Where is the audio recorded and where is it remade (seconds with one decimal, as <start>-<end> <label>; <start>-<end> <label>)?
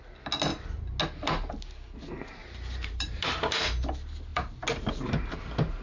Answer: 0.0-2.4 recorded; 2.4-3.9 remade; 3.9-5.8 recorded